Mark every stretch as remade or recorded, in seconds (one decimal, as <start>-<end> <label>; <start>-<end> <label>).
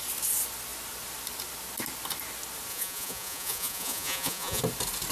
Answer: 0.0-2.7 recorded; 2.7-4.6 remade; 4.6-5.1 recorded